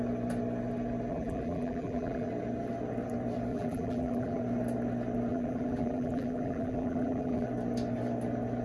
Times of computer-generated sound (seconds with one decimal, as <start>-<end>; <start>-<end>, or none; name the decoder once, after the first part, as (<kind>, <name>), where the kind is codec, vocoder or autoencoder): 1.1-2.3 (vocoder, BigVGAN v2); 3.5-4.4; 5.3-7.5